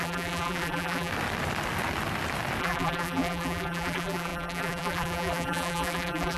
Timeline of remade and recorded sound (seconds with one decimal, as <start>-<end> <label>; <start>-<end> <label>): 0.0-1.1 remade; 1.1-2.6 recorded; 2.6-6.4 remade

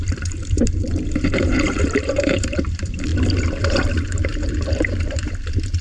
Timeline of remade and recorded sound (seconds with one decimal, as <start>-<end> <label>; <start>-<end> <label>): 0.0-5.8 remade

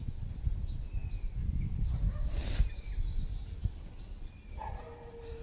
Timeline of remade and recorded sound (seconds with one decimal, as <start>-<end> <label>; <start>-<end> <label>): 0.0-1.0 recorded; 1.0-2.8 remade; 2.8-5.4 recorded